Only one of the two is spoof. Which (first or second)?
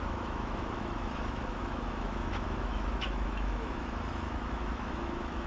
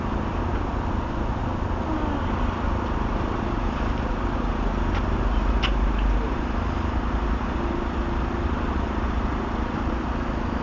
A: first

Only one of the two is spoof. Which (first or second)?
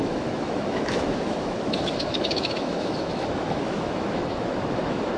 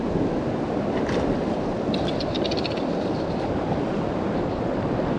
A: first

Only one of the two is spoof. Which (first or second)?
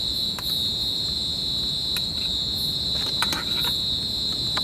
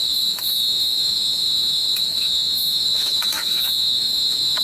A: second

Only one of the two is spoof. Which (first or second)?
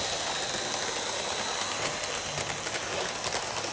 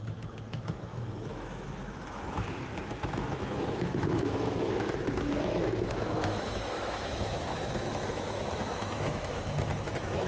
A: second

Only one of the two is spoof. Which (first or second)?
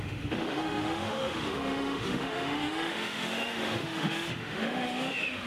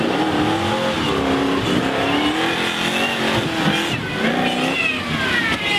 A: first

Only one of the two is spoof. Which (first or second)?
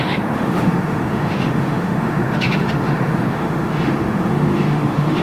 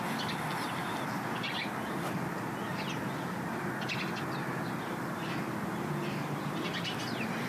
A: first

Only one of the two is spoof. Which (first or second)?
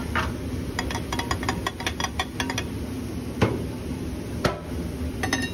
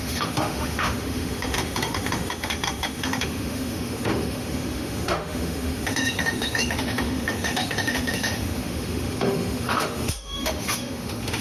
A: second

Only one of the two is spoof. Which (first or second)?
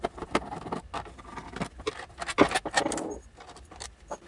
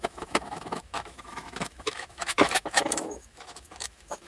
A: second